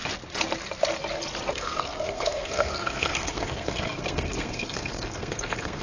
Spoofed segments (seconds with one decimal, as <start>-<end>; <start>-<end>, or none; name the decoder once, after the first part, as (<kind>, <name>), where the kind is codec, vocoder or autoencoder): 1.5-5.8 (codec, SNAC)